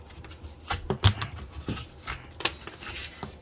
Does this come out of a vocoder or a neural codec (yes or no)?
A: no